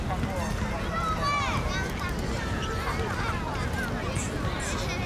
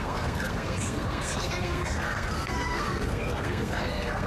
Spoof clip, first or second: second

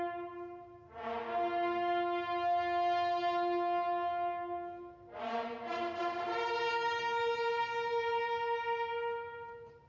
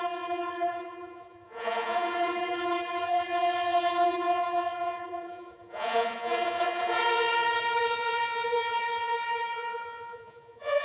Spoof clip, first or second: second